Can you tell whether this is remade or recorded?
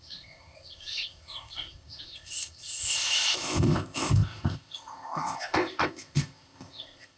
remade